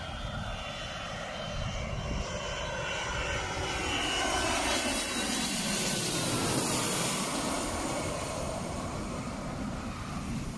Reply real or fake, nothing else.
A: fake